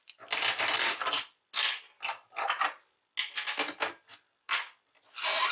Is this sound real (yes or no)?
yes